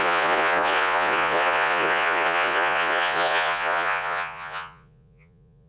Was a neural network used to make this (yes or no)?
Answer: yes